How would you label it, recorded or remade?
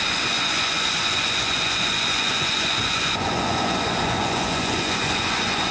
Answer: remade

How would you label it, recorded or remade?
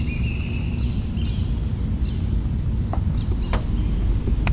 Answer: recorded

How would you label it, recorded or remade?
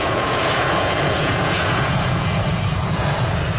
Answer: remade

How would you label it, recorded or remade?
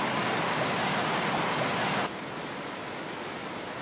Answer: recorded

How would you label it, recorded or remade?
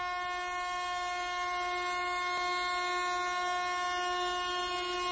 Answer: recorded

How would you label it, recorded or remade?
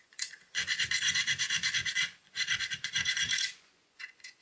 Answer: remade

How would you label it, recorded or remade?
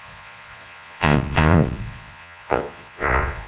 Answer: remade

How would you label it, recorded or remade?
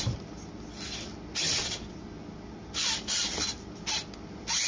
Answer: recorded